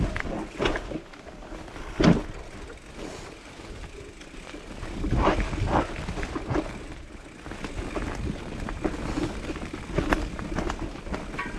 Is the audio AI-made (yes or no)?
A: no